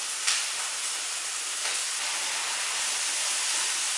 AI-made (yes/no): no